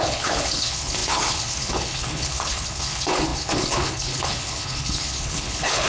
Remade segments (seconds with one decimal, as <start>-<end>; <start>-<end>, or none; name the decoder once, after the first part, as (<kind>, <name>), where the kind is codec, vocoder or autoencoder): 0.0-5.9 (codec, HILCodec)